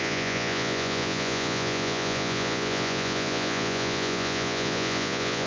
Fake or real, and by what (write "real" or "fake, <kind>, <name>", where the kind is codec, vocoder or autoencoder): fake, vocoder, Vocos